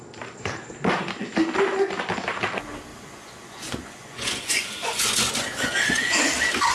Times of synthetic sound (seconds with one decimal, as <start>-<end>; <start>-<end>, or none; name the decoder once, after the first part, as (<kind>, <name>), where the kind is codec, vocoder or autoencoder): 2.9-6.2 (vocoder, Vocos)